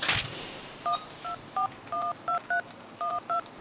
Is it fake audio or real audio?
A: fake